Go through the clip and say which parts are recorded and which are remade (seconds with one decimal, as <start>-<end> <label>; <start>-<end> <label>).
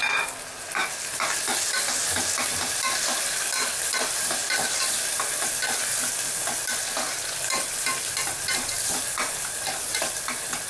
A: 0.0-10.7 recorded